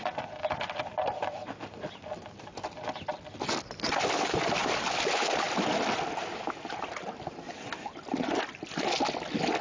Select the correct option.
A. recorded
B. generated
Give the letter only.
A